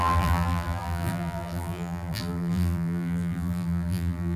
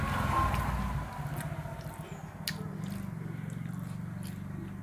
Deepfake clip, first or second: first